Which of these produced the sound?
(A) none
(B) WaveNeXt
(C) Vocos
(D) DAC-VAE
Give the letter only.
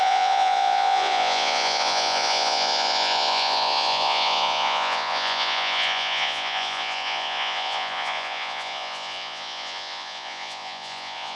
C